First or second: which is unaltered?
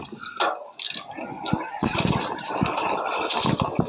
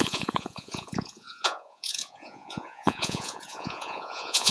first